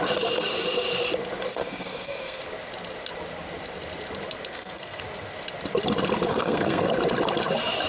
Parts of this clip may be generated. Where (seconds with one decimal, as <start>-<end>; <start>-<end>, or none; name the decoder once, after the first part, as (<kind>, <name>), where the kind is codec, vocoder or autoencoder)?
1.5-2.4 (codec, SNAC); 4.5-5.0; 6.3-6.9